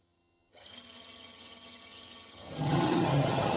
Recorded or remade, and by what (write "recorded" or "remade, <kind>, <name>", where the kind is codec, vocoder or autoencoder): remade, vocoder, HiFi-GAN